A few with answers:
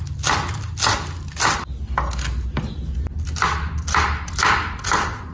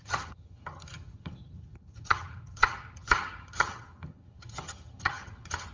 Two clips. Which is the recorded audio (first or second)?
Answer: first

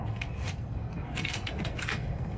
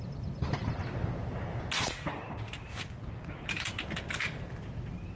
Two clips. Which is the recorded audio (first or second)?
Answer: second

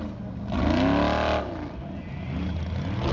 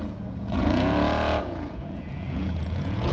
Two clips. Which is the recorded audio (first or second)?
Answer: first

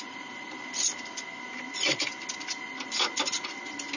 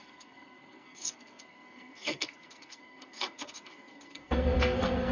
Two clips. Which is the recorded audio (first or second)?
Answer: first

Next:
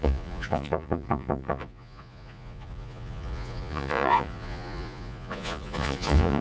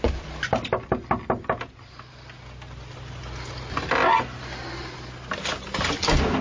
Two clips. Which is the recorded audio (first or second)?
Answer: second